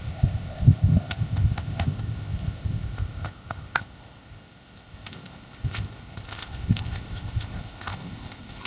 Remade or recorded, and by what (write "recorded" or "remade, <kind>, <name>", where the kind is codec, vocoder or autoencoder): remade, codec, ZipCodec